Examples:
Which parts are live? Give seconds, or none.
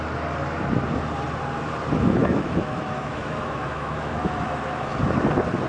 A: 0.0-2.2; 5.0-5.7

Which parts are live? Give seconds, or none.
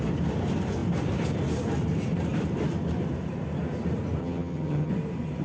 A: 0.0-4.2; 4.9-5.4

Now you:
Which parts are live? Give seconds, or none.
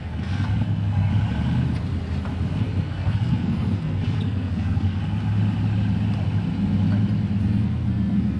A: 1.1-2.6; 5.0-7.4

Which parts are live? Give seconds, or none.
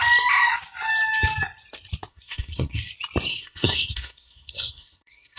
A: 0.0-2.1; 2.9-3.3